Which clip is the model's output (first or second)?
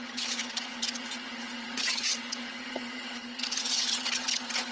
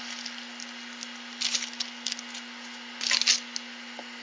first